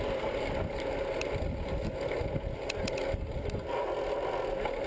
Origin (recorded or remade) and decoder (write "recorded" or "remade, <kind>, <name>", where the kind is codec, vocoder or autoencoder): recorded